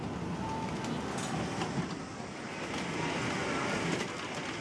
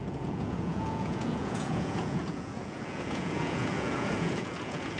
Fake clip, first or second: second